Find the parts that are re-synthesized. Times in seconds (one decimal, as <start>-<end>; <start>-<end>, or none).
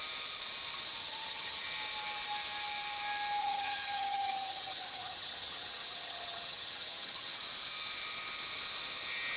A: 1.0-1.6; 3.4-7.4